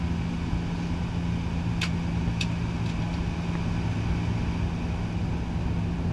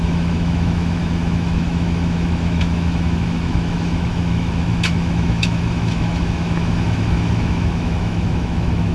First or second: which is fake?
second